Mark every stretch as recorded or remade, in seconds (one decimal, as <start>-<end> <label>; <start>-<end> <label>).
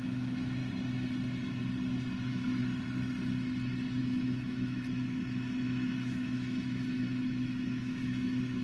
0.0-0.6 remade; 0.6-2.2 recorded; 2.2-2.6 remade; 2.6-4.0 recorded; 4.0-8.6 remade